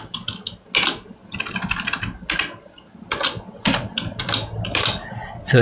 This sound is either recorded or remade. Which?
recorded